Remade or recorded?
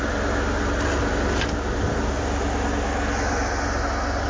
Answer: recorded